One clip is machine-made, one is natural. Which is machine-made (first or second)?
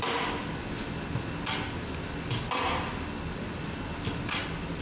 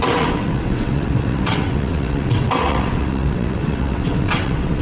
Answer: second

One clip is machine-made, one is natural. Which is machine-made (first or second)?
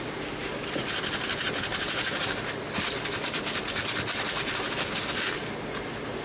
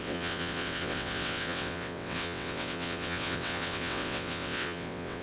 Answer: second